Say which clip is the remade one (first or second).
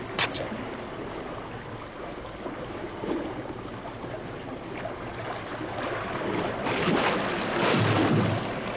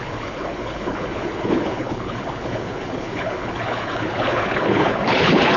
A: second